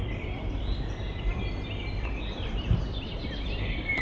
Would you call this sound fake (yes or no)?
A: yes